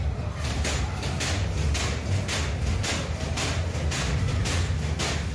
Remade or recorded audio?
recorded